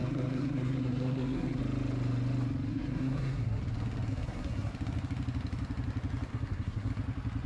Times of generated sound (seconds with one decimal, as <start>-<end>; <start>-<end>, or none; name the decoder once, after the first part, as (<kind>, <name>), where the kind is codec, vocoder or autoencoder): 0.0-1.6 (codec, SNAC); 2.7-3.6; 4.1-4.7; 6.3-6.9